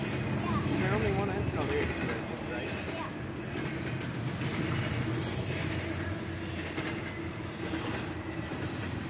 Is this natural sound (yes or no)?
yes